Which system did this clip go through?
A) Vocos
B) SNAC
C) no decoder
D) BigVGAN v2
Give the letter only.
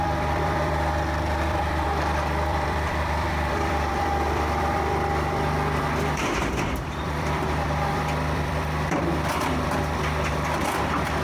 D